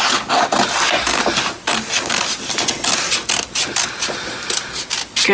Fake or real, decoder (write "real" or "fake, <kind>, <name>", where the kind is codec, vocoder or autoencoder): real